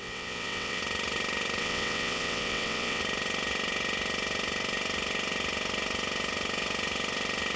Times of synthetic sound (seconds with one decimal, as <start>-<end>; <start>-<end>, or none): 0.0-0.8; 1.6-3.0